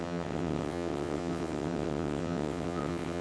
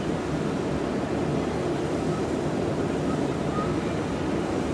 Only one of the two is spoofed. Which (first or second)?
first